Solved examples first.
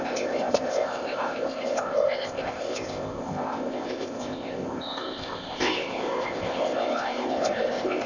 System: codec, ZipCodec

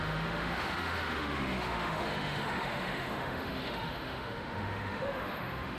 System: autoencoder, DAC-VAE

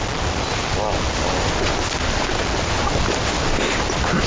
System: none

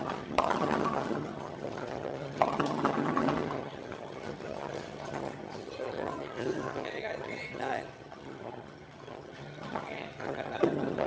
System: vocoder, HiFi-GAN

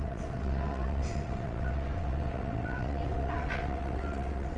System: vocoder, WaveNeXt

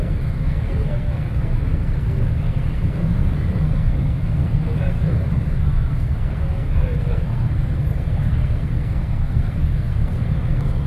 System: codec, SNAC